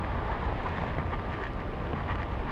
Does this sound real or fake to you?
real